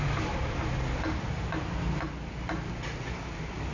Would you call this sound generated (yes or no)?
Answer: no